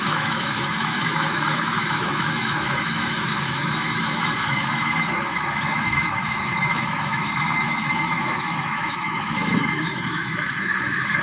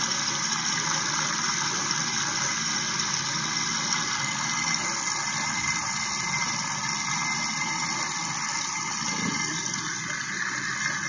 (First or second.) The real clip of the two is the second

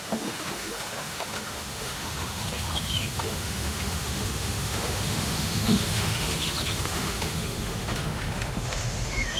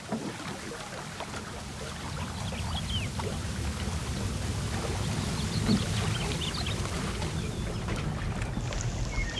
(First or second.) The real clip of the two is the second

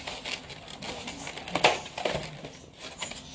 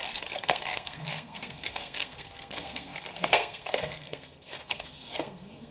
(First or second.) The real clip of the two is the first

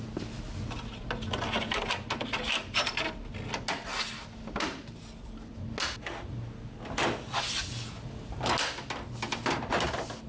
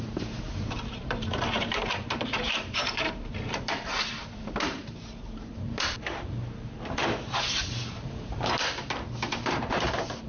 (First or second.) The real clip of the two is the first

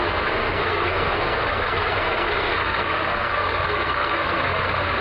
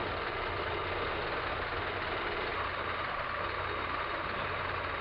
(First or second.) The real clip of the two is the second